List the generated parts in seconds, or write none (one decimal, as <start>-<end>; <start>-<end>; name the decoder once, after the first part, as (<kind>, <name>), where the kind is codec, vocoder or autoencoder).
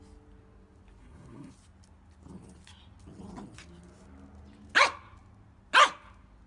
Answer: 1.0-1.5 (codec, SNAC)